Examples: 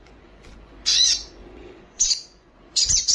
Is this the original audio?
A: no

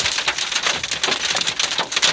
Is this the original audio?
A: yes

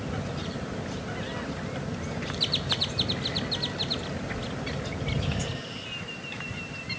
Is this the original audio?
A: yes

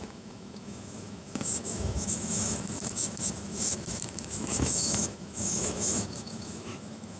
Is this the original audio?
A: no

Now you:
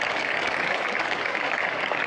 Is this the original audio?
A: no